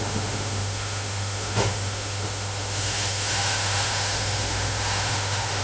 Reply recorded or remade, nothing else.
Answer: remade